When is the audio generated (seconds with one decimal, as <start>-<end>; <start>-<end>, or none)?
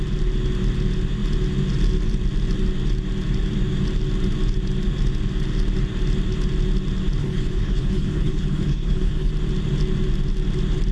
7.2-9.3